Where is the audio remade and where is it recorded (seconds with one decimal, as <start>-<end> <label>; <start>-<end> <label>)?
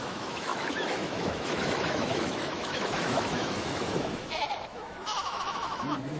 0.0-6.2 remade